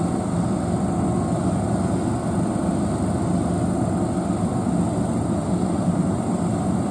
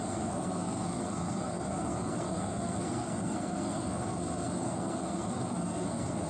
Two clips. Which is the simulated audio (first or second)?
second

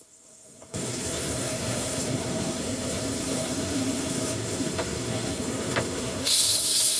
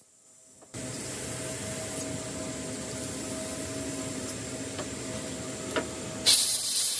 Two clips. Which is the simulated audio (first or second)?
first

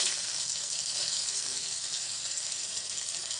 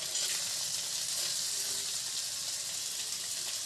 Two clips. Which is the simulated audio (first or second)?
first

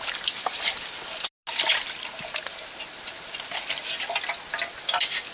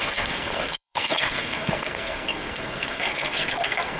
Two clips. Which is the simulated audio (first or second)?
second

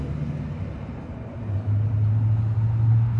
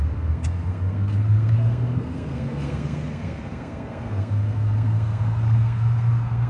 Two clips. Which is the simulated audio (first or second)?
second